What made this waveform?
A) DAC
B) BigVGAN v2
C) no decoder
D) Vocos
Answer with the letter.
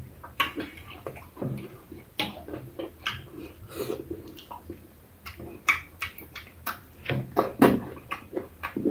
B